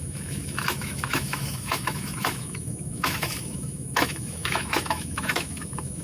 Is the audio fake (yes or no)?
yes